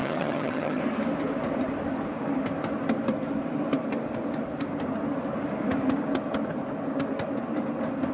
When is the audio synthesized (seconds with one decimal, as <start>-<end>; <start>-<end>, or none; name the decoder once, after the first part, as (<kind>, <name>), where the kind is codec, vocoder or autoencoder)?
0.0-0.8 (vocoder, HiFi-GAN)